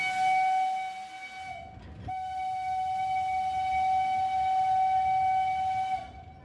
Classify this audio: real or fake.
real